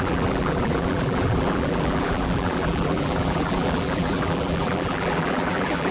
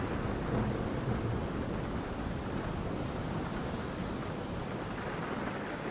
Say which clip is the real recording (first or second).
second